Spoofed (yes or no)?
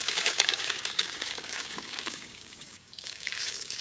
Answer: yes